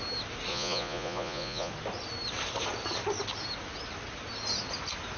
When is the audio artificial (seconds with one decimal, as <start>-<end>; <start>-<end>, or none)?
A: 0.5-1.7